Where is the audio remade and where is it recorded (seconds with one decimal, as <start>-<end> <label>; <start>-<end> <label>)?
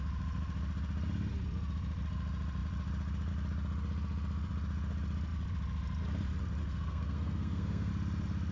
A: 0.0-6.6 recorded; 6.6-7.9 remade; 7.9-8.5 recorded